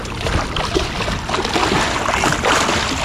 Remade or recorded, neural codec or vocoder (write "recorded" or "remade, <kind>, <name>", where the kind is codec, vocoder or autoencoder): recorded